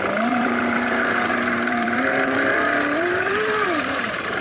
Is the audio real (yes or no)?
no